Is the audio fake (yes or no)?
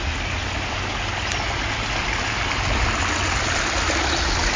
no